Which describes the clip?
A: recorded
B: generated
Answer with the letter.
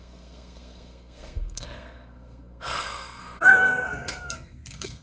B